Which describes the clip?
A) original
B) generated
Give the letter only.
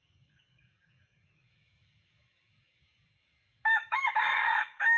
B